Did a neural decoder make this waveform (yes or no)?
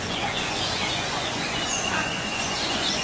yes